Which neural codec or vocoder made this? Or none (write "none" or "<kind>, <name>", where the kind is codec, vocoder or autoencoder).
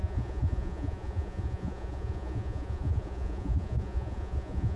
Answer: vocoder, Vocos